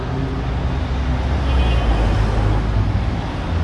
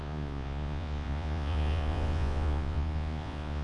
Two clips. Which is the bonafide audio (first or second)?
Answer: first